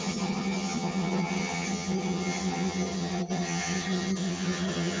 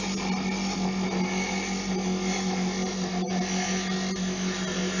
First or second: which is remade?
first